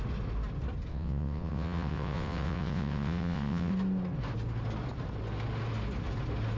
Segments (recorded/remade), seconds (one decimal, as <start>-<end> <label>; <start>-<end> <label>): 0.0-0.9 recorded; 0.9-3.7 remade; 3.7-6.6 recorded